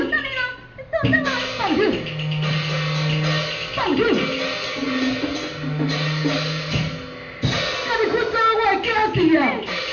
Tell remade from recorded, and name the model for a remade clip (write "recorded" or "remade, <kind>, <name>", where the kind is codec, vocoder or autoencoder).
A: recorded